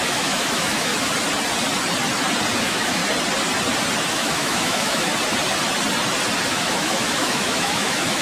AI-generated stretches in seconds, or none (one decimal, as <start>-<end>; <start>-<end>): 0.0-0.9; 2.6-3.0; 4.1-5.1; 6.5-8.2